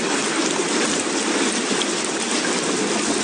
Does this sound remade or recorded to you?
recorded